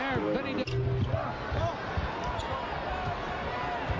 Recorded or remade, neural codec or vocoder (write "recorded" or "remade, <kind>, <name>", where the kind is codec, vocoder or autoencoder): recorded